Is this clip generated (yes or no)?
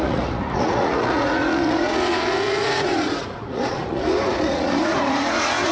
yes